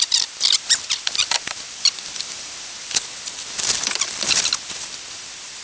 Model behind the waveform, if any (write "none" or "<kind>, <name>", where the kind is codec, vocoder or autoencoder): vocoder, BigVGAN v2